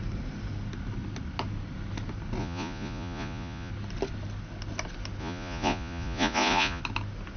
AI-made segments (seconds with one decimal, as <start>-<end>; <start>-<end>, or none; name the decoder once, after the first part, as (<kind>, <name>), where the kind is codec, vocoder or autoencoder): 2.4-3.7 (vocoder, Vocos); 5.2-6.8